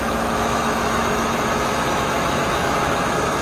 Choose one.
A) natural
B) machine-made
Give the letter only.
B